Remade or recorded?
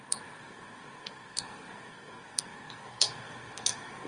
remade